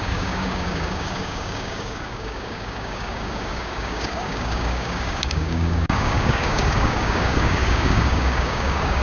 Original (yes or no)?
no